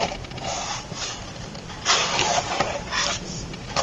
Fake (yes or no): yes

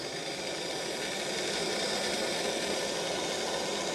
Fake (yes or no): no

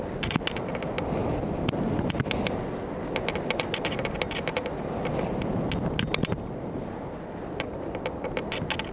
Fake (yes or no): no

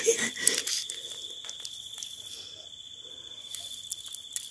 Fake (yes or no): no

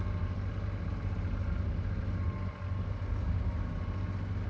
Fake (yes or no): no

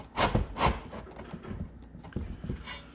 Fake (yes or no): no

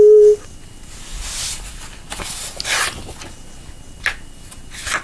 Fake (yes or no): no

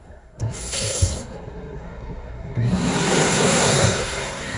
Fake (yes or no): yes